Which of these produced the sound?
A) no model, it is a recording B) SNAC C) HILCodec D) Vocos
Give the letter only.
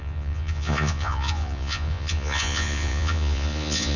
D